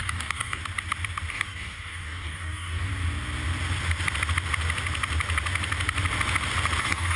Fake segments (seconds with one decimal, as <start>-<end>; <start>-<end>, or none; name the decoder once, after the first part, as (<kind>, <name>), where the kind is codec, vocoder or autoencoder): 0.0-0.6 (codec, DAC); 1.3-2.9; 6.8-7.2